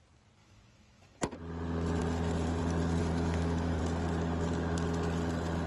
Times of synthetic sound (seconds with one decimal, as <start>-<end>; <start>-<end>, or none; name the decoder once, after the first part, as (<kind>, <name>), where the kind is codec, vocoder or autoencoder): 0.4-1.4 (autoencoder, DAC-VAE); 3.0-3.8